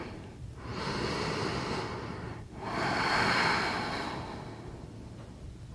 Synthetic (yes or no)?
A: no